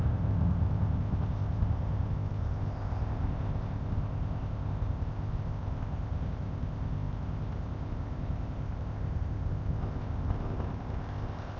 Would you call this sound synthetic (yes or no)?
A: yes